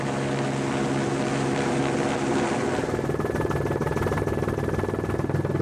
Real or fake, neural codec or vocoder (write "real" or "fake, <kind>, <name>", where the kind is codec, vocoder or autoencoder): real